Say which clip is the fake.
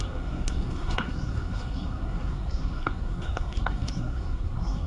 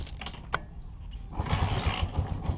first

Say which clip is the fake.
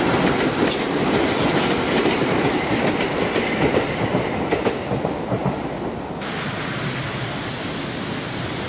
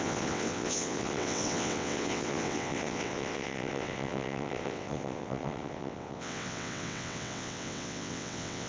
second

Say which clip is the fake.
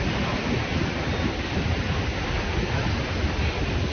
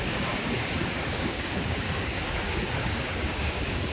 second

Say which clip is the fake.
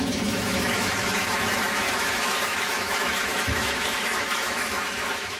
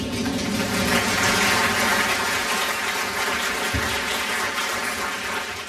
first